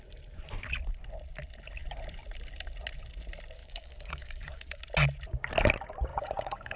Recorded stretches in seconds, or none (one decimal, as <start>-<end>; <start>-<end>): 0.0-3.6; 4.8-6.1